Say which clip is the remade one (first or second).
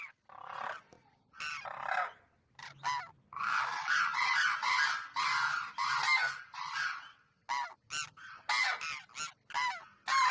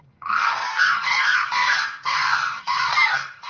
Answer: second